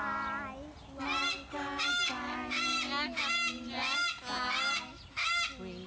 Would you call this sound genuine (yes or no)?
yes